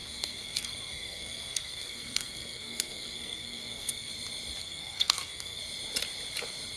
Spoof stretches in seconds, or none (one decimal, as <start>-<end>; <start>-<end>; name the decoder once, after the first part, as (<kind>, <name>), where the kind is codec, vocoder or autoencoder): 0.0-4.1 (codec, SNAC); 4.6-5.6